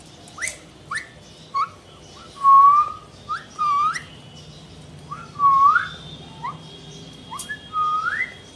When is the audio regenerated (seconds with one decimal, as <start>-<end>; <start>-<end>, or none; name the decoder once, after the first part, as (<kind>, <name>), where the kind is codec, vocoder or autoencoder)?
none